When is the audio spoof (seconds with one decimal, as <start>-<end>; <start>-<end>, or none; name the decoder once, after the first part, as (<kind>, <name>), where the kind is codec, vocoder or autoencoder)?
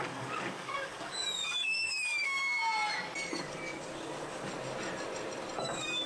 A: 0.0-2.6 (codec, DAC); 3.4-4.5; 5.6-6.1